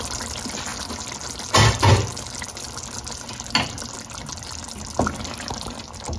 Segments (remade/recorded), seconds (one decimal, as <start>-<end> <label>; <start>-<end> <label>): 0.0-6.2 recorded